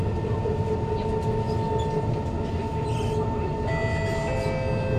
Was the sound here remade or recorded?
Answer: recorded